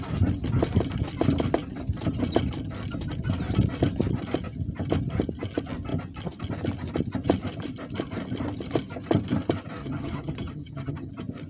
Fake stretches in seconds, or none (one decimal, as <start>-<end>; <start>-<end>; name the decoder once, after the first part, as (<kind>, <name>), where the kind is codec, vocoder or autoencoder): 9.8-11.1 (vocoder, HiFi-GAN)